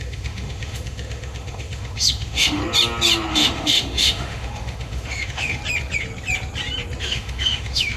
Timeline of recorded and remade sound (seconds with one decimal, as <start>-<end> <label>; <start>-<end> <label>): 0.0-2.6 remade; 2.6-3.3 recorded; 3.3-5.6 remade; 5.6-7.0 recorded; 7.0-8.0 remade